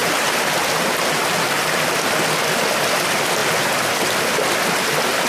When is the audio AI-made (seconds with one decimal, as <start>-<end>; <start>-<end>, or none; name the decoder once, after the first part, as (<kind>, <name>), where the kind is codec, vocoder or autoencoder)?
none